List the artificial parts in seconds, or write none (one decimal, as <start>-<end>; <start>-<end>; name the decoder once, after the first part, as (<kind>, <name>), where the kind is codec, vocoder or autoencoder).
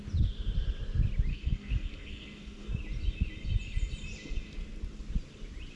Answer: 1.3-2.7 (codec, SNAC)